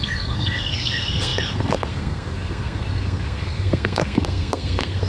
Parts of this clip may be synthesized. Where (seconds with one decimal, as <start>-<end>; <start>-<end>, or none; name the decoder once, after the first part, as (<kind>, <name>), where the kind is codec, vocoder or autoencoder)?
0.0-5.1 (codec, SNAC)